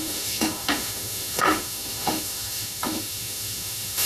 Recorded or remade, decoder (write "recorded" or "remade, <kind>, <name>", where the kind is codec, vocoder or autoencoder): remade, autoencoder, DAC-VAE